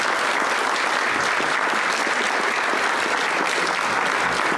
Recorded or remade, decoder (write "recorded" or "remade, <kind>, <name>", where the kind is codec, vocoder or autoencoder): recorded